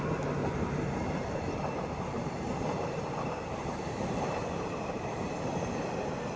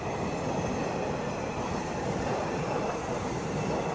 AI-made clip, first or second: first